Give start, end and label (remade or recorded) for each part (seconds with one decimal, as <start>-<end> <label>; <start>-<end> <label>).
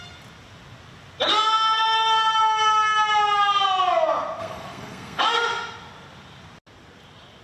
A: 0.0-4.4 recorded; 4.4-5.2 remade; 5.2-7.4 recorded